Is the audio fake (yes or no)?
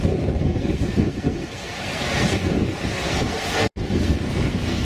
yes